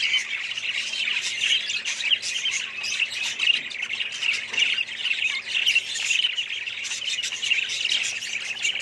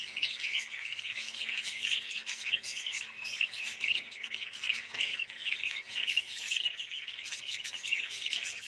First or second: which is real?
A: first